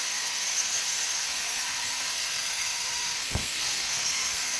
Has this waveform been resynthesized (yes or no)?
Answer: yes